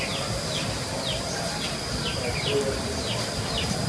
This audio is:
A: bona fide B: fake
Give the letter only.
A